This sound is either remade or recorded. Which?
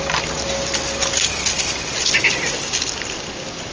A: recorded